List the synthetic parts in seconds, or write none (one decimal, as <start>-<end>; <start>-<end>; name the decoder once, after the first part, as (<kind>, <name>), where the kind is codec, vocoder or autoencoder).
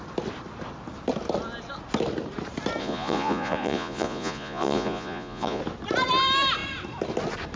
2.8-5.6 (vocoder, Vocos)